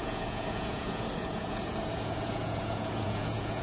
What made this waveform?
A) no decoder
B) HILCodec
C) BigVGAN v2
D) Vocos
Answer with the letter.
D